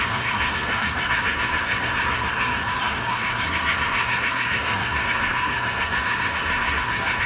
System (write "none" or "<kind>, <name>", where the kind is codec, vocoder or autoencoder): codec, SNAC